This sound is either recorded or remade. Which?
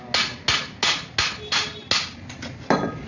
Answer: recorded